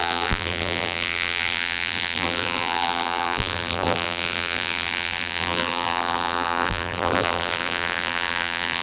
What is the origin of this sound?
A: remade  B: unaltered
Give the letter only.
A